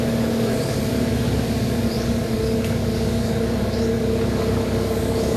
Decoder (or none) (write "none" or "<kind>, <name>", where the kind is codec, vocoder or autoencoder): codec, DAC